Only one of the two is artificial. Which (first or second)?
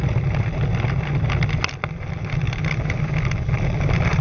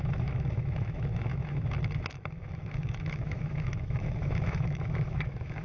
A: second